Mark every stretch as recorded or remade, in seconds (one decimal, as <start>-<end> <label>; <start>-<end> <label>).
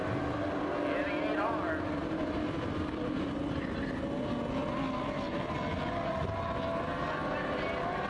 0.0-2.0 recorded; 2.0-3.3 remade; 3.3-8.1 recorded